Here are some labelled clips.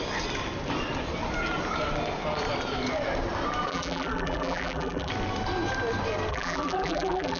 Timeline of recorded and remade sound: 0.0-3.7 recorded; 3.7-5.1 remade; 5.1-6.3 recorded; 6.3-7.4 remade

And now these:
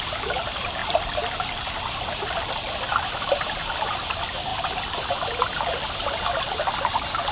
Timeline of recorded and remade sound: 0.0-7.3 recorded